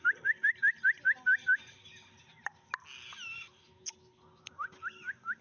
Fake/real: real